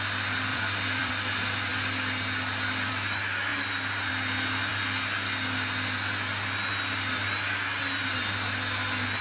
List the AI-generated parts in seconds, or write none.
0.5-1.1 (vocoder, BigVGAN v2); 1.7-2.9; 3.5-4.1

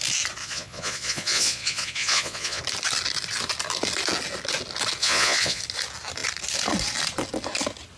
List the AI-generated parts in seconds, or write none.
0.4-2.6 (vocoder, Vocos); 5.0-5.6

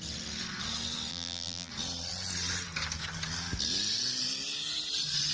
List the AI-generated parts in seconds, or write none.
1.1-1.7 (vocoder, BigVGAN v2)

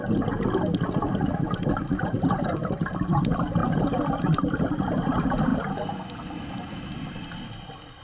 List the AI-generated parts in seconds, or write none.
none

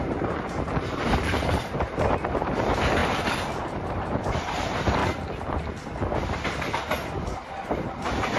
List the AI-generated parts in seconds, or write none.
0.0-5.0 (vocoder, BigVGAN v2)

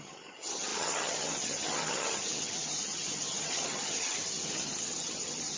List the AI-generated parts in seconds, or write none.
0.0-5.6 (vocoder, HiFi-GAN)

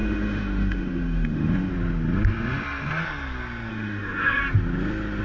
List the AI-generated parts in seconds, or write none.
0.0-1.7 (autoencoder, DAC-VAE); 3.7-4.4